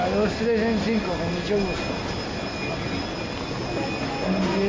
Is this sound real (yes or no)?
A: yes